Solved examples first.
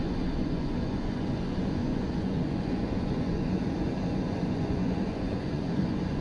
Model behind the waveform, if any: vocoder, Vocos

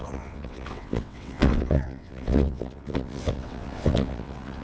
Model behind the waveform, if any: vocoder, WaveNeXt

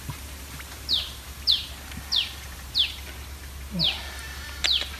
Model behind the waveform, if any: none